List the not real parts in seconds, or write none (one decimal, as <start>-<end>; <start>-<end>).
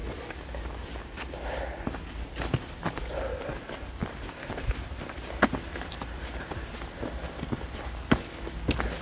none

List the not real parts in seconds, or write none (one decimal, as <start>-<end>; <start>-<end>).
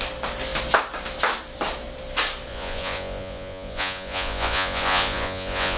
2.5-5.8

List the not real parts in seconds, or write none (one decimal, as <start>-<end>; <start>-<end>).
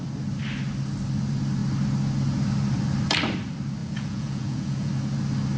3.8-4.9